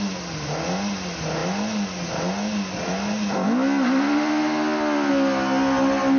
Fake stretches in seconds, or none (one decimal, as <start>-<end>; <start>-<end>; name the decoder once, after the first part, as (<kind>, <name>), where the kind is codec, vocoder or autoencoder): none